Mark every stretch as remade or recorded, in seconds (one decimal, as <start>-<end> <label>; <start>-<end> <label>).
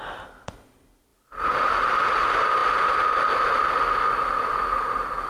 0.0-1.1 recorded; 1.1-1.7 remade; 1.7-5.3 recorded